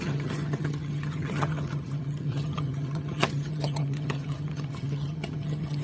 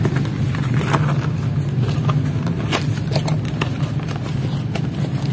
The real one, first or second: second